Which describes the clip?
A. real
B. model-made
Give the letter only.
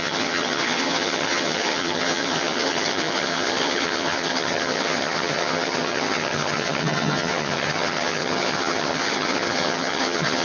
B